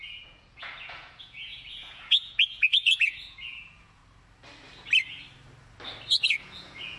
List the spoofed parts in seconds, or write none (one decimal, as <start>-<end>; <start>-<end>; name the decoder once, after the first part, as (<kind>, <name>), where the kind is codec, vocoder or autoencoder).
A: 0.0-4.0 (vocoder, Vocos); 6.2-7.0